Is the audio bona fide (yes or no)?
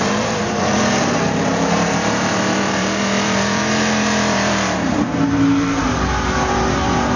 no